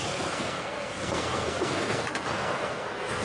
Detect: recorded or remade remade